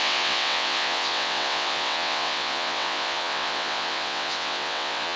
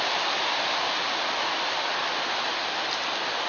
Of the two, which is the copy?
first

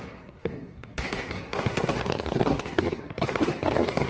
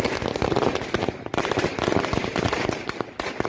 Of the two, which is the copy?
first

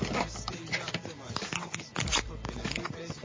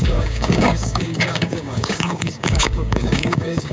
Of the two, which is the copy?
second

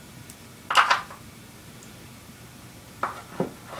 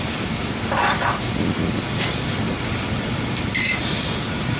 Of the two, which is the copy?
second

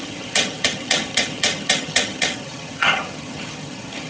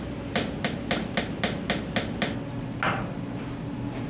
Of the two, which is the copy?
first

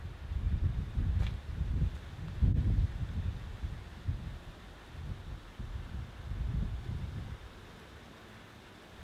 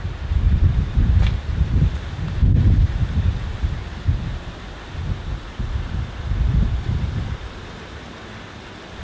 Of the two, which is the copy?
second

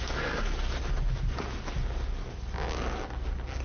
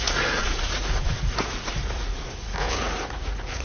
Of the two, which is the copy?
second